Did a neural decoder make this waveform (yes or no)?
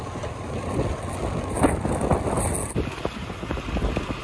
no